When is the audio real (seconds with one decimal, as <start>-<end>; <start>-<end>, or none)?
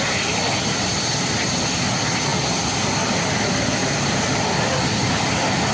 0.0-3.8; 4.4-5.7